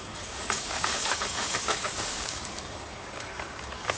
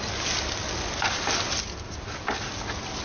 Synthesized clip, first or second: first